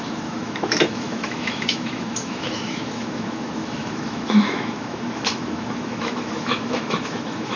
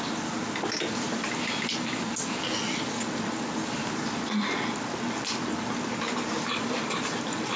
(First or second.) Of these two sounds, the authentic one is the second